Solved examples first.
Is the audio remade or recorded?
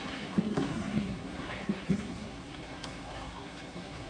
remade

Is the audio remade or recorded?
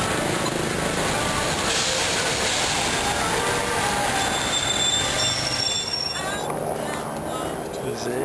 recorded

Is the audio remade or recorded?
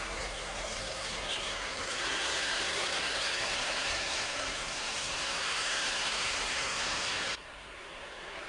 remade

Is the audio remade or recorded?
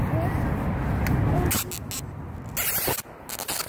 recorded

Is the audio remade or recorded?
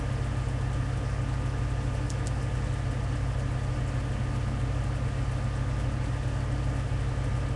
recorded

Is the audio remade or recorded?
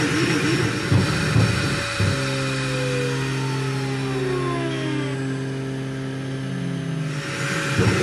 recorded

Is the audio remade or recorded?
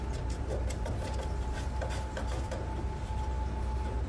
recorded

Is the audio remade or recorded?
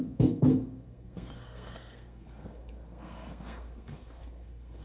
remade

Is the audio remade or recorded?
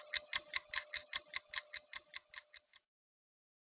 recorded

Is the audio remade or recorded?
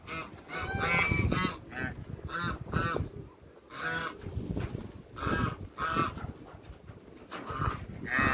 recorded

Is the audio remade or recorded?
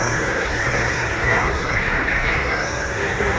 remade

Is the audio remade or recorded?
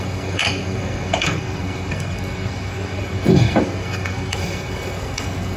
remade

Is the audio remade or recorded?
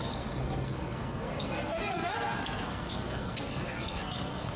remade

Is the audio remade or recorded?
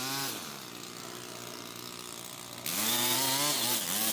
recorded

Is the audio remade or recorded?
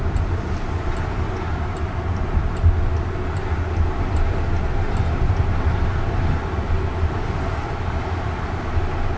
recorded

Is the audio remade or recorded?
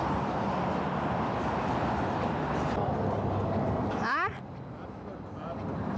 recorded